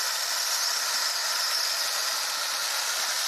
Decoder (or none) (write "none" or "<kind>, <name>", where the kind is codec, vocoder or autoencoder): none